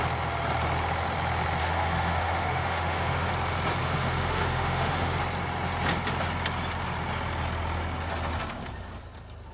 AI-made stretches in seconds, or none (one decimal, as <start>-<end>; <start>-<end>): 1.6-3.3; 3.8-5.2